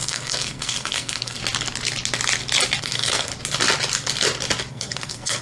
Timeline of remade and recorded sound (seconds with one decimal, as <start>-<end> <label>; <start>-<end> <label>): 0.0-1.4 remade; 1.4-2.8 recorded; 2.8-3.3 remade; 3.3-4.7 recorded; 4.7-5.4 remade

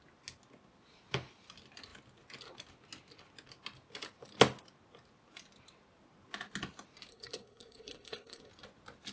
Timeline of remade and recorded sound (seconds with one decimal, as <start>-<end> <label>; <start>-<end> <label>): 0.0-7.1 recorded; 7.1-8.5 remade; 8.5-9.1 recorded

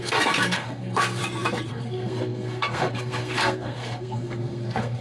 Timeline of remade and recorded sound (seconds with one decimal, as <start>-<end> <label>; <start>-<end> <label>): 0.0-1.2 remade; 1.2-1.7 recorded; 1.7-5.0 remade

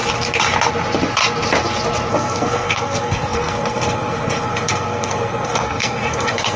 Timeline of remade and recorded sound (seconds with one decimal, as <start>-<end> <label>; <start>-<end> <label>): 0.0-2.1 recorded; 2.1-6.6 remade

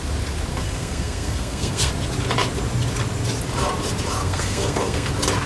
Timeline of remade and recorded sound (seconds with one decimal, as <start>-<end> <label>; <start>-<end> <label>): 0.0-0.5 recorded; 0.5-1.9 remade; 1.9-4.2 recorded; 4.2-5.1 remade; 5.1-5.5 recorded

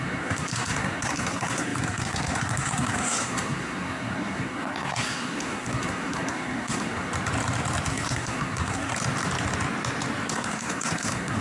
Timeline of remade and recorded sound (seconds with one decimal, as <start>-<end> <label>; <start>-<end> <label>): 0.0-7.1 remade; 7.1-7.9 recorded; 7.9-8.9 remade; 8.9-10.3 recorded; 10.3-11.4 remade

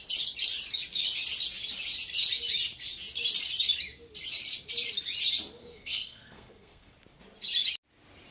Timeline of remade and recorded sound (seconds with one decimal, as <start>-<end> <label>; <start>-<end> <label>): 0.0-5.6 recorded; 5.6-6.9 remade; 6.9-8.3 recorded